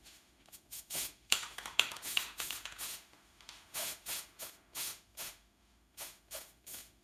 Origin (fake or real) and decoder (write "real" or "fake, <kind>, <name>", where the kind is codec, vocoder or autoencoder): fake, autoencoder, DAC-VAE